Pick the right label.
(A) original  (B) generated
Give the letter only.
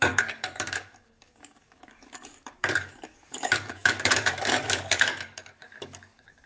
B